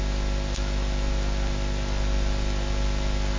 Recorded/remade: recorded